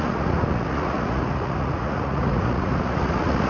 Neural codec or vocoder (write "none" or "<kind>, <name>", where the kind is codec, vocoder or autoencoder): vocoder, Vocos